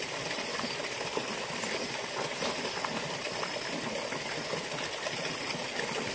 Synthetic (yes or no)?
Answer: no